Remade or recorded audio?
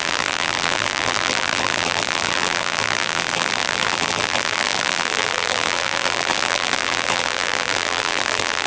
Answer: remade